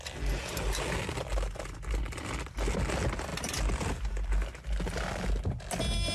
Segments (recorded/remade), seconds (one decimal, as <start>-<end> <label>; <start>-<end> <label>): 0.0-6.1 recorded